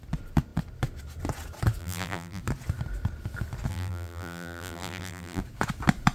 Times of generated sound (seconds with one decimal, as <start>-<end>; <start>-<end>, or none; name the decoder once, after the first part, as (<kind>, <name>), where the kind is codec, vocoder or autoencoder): 1.8-2.4 (vocoder, BigVGAN v2); 3.7-5.4